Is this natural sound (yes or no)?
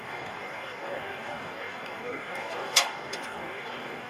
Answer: no